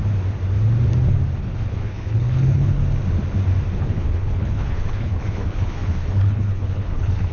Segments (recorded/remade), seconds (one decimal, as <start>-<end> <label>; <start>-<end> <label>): 0.0-1.4 recorded; 1.4-2.8 remade; 2.8-3.8 recorded; 3.8-7.3 remade